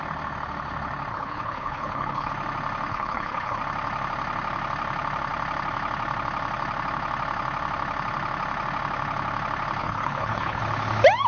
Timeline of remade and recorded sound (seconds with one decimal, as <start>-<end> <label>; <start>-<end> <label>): 0.0-1.1 recorded; 1.1-2.3 remade; 2.3-2.9 recorded; 2.9-3.6 remade; 3.6-9.8 recorded; 9.8-10.6 remade; 10.6-11.3 recorded